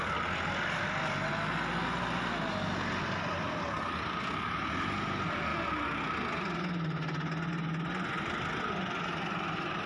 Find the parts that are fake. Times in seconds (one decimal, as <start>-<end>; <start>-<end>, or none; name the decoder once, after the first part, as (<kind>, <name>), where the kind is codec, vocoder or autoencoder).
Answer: none